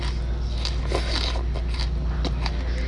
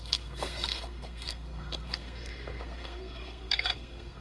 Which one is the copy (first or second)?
second